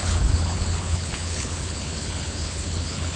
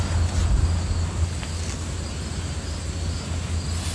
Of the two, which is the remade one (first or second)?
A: first